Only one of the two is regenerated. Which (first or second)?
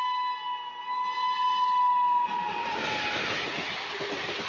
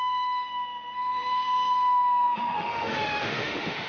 second